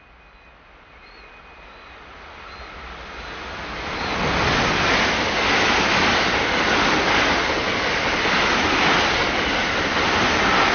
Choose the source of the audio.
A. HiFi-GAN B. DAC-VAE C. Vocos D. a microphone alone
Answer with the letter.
D